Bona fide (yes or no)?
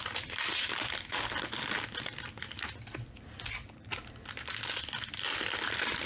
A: yes